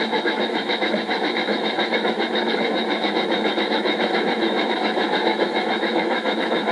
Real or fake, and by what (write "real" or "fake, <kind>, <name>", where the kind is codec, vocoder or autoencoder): fake, autoencoder, DAC-VAE